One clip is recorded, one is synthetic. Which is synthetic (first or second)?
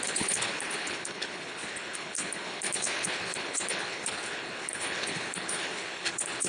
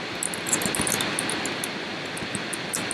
first